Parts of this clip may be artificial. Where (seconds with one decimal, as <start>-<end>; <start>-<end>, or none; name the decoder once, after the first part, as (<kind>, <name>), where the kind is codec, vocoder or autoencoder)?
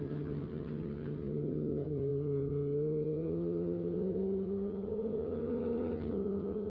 0.0-6.7 (vocoder, HiFi-GAN)